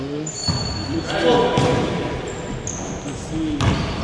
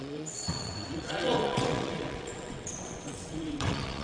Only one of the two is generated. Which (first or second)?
second